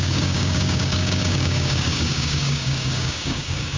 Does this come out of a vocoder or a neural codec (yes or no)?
yes